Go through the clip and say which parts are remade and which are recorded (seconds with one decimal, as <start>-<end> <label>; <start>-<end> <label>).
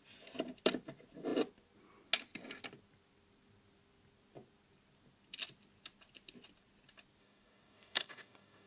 0.0-7.2 recorded; 7.2-8.7 remade